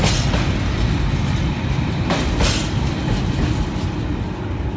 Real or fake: real